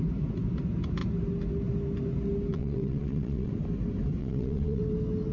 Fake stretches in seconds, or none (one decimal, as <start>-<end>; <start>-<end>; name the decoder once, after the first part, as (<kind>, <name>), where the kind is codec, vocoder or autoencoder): 2.5-3.5 (vocoder, WaveNeXt); 4.2-4.8